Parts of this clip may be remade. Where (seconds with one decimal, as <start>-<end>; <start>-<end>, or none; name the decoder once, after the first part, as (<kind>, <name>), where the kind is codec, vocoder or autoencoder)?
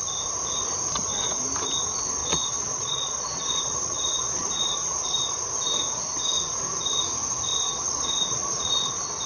2.2-5.4 (vocoder, Vocos); 7.5-8.9